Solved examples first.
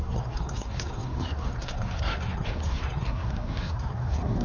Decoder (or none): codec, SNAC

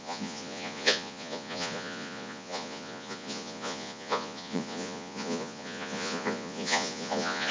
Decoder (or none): vocoder, Vocos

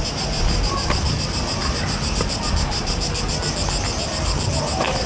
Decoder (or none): none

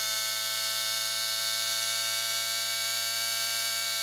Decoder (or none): vocoder, BigVGAN v2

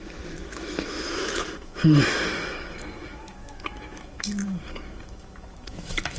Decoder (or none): autoencoder, DAC-VAE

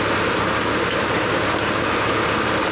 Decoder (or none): none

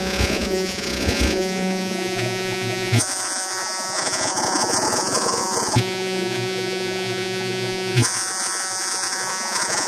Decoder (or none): vocoder, Vocos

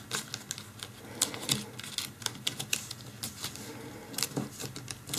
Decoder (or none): none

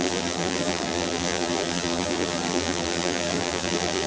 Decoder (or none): vocoder, BigVGAN v2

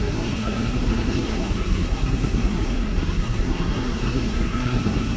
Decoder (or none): codec, SNAC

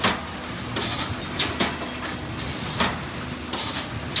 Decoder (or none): none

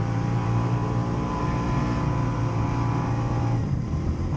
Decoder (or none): vocoder, BigVGAN v2